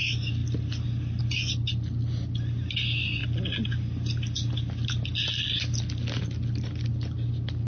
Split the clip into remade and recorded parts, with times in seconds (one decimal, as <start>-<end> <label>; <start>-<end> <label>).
0.0-7.7 recorded